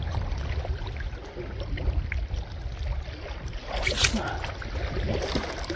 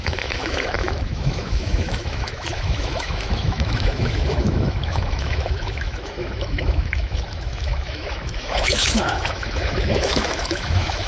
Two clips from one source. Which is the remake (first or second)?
second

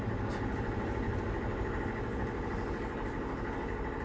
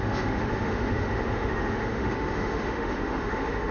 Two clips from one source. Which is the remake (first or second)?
second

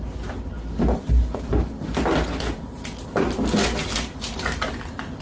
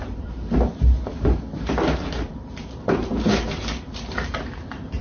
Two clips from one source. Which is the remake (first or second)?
second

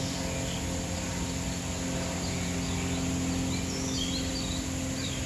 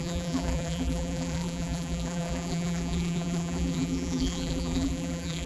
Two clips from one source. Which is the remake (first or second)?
second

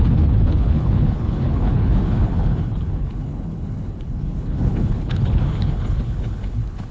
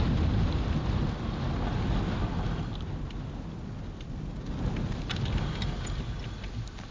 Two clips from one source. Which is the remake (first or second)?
first